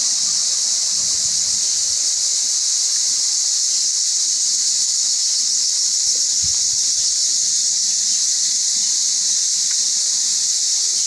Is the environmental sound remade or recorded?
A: recorded